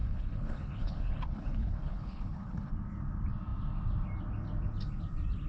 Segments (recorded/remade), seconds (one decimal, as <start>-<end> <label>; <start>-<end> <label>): 0.0-2.7 remade; 2.7-5.5 recorded